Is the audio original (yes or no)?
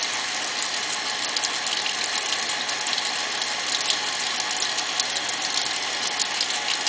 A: yes